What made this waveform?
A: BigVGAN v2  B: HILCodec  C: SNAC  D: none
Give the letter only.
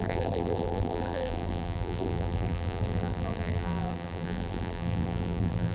A